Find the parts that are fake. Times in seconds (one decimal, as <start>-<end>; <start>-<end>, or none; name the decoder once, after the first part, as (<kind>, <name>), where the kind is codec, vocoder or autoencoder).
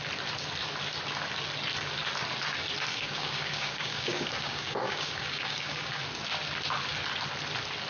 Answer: 2.9-6.0 (codec, DAC)